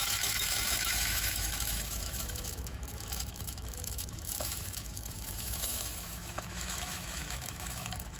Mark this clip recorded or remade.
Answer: remade